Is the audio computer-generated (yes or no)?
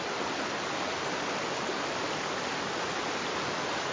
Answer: no